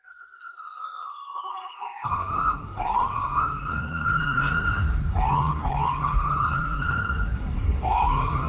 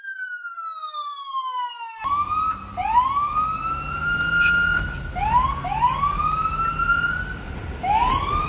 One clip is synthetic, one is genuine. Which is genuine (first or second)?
second